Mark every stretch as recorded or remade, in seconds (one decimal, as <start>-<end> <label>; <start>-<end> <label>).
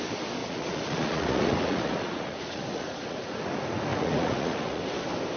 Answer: 0.0-0.4 recorded; 0.4-3.4 remade; 3.4-3.9 recorded; 3.9-4.8 remade; 4.8-5.4 recorded